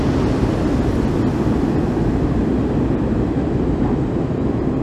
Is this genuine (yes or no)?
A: yes